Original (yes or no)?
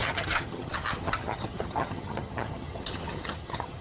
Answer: no